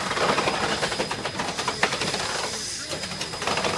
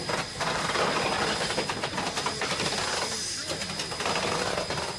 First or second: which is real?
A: second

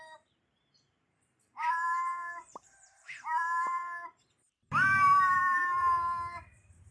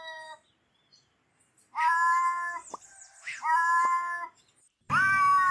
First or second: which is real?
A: second